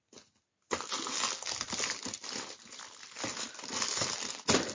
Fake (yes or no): no